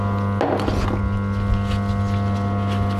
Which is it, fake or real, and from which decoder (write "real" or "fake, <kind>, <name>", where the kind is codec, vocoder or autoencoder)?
real